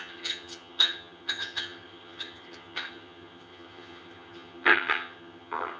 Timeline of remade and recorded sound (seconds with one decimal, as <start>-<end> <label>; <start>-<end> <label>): 0.0-5.8 remade